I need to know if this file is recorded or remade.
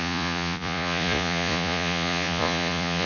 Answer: remade